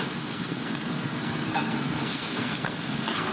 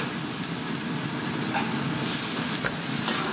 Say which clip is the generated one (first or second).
first